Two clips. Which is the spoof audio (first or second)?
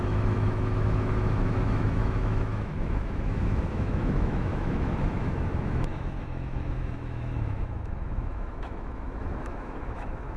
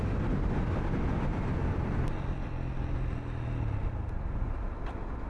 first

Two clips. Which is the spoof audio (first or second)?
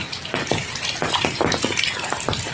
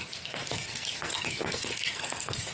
second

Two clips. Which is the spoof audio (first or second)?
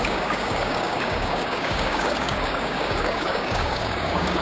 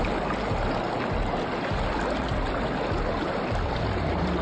first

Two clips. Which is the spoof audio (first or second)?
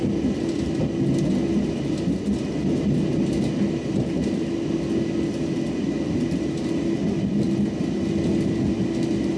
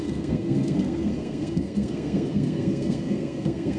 second